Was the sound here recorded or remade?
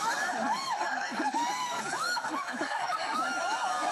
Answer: remade